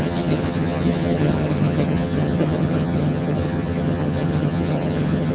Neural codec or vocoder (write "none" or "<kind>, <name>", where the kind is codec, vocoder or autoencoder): vocoder, HiFi-GAN